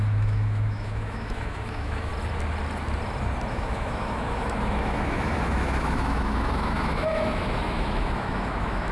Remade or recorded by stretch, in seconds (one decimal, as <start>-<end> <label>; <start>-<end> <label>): 0.0-2.1 remade; 2.1-3.5 recorded; 3.5-8.9 remade